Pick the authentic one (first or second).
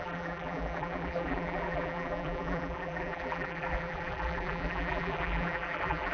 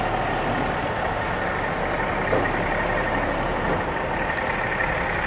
second